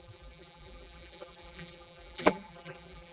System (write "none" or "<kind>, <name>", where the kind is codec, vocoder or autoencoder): vocoder, BigVGAN v2